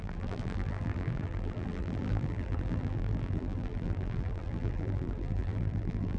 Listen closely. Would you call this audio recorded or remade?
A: remade